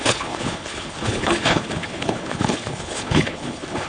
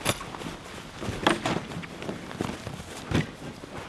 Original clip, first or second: second